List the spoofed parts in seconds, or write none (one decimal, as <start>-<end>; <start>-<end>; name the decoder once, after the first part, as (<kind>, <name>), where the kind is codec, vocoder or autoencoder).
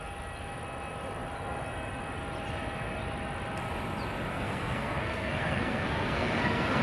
4.3-6.8 (codec, SNAC)